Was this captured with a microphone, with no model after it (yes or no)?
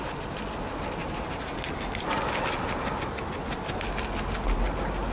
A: yes